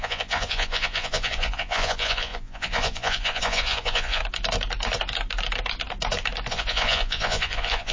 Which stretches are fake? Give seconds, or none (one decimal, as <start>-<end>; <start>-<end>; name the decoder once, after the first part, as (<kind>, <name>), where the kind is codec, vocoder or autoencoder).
0.0-4.2 (vocoder, Vocos); 6.5-7.9